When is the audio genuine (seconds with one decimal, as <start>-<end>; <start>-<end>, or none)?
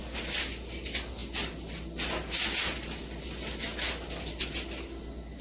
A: 0.0-5.4